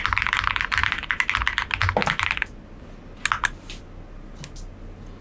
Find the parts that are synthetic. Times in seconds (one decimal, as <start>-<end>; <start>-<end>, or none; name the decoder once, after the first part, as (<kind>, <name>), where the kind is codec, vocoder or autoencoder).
none